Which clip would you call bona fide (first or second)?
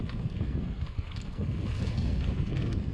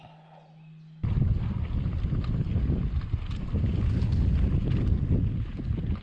second